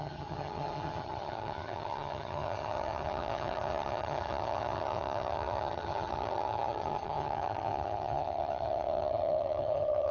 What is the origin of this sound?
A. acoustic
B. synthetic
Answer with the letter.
B